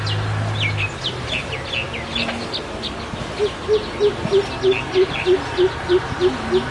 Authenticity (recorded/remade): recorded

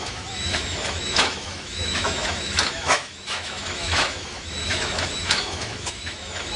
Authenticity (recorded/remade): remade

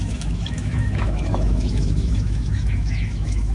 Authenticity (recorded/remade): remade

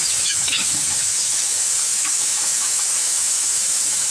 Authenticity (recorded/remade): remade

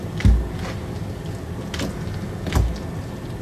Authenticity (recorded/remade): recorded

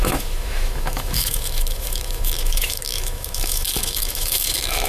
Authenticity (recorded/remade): remade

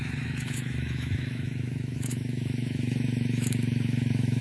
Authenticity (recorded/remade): remade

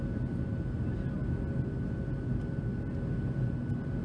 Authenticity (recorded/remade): recorded